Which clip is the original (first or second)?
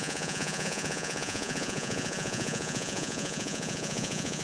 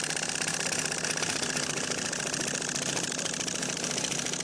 second